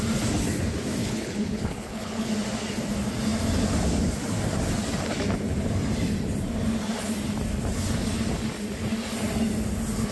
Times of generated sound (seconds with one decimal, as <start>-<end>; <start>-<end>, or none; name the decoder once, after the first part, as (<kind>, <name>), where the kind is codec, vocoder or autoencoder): 1.0-2.3 (codec, HILCodec)